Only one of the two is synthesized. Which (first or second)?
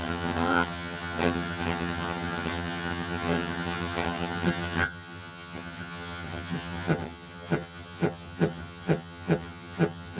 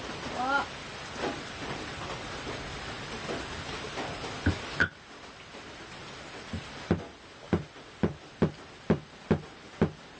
first